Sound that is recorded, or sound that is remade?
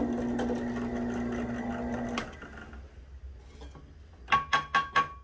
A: recorded